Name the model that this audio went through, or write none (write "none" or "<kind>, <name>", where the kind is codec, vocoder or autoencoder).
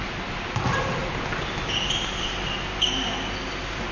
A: none